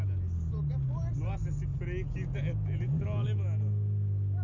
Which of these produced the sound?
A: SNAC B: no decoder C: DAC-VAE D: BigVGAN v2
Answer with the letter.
B